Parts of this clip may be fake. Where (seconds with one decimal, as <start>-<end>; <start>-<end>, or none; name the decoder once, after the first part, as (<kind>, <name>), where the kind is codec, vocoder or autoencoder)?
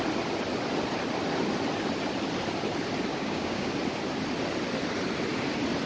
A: 3.1-3.7 (codec, DAC)